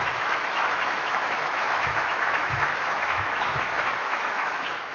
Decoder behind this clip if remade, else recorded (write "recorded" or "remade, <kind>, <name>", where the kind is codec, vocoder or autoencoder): remade, autoencoder, DAC-VAE